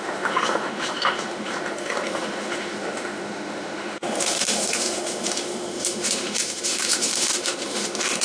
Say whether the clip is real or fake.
fake